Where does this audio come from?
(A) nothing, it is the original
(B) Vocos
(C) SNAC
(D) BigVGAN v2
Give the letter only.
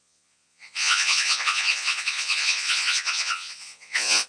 B